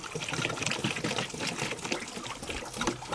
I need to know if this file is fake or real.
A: real